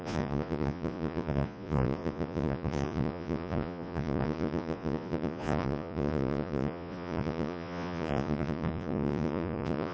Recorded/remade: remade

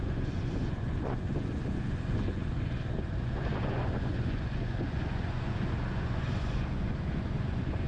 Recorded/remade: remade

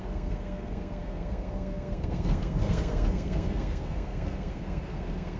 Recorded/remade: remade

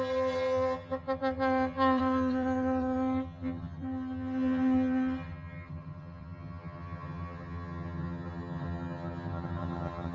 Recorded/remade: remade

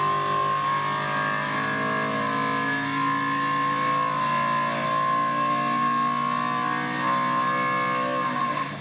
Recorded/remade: recorded